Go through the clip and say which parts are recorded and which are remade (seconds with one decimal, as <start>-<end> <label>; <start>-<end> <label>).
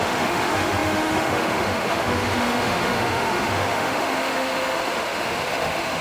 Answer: 0.0-6.0 remade